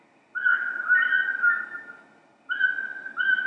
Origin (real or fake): real